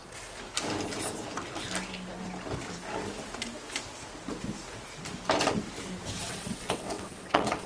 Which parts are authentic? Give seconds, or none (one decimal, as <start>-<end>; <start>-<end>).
0.0-6.2